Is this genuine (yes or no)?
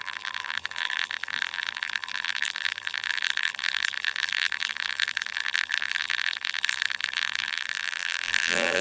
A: no